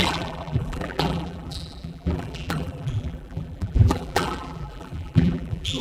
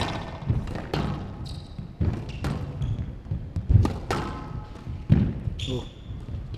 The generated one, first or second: first